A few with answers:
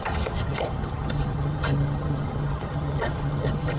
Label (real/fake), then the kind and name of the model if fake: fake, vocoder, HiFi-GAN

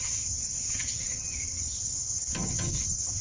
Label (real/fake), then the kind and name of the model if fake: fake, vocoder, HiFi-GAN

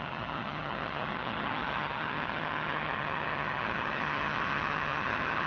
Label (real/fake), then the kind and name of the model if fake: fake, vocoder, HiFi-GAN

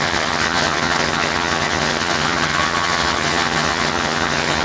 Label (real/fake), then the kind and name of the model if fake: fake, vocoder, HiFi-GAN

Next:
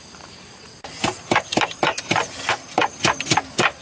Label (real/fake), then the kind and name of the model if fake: real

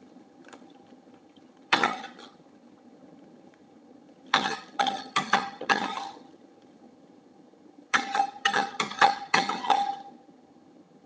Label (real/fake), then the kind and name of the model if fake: fake, vocoder, HiFi-GAN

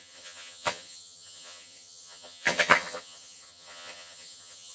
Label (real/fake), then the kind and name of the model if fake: fake, vocoder, HiFi-GAN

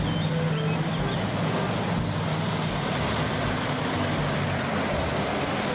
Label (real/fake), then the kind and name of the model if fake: real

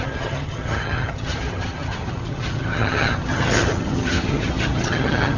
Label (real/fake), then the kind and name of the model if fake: fake, vocoder, HiFi-GAN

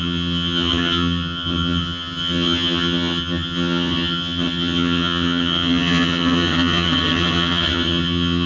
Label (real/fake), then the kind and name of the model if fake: fake, vocoder, HiFi-GAN